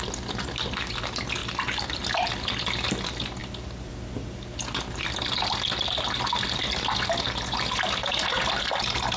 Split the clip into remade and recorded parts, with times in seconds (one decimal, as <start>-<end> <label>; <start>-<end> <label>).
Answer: 0.0-1.4 recorded; 1.4-2.0 remade; 2.0-3.4 recorded; 3.4-3.9 remade; 3.9-9.2 recorded